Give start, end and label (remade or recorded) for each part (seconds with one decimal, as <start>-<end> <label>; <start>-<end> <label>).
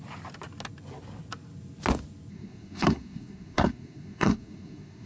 0.0-2.3 recorded; 2.3-5.1 remade